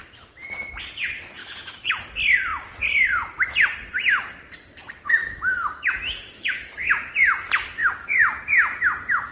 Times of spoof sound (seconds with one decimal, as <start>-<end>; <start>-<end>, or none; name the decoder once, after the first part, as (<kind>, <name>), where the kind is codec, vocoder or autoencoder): 1.4-2.0 (autoencoder, DAC-VAE); 5.2-6.9